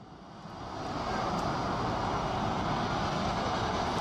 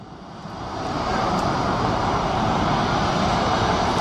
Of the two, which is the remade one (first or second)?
second